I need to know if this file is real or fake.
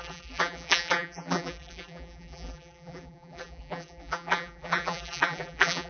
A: fake